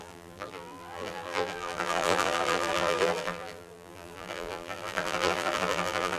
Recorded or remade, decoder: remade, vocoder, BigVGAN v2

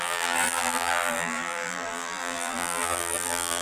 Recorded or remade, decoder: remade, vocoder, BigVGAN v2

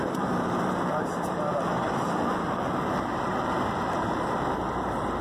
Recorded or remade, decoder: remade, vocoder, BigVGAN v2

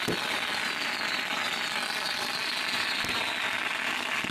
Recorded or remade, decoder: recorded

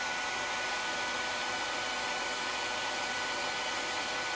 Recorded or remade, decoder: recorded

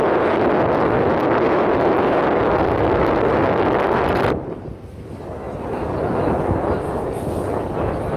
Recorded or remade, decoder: remade, vocoder, BigVGAN v2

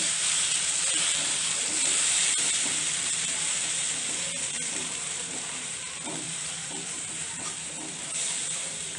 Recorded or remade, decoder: remade, vocoder, BigVGAN v2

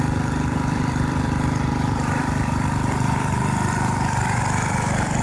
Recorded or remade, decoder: remade, vocoder, BigVGAN v2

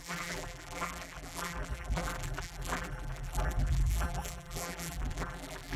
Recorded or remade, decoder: remade, vocoder, BigVGAN v2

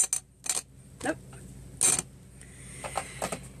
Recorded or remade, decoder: recorded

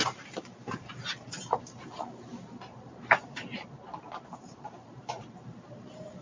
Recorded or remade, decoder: remade, vocoder, BigVGAN v2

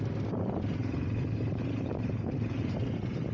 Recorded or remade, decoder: remade, vocoder, BigVGAN v2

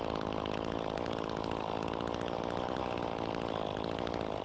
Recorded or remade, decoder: recorded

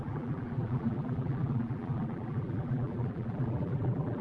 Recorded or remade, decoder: remade, vocoder, BigVGAN v2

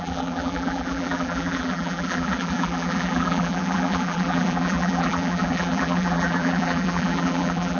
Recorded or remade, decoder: remade, vocoder, BigVGAN v2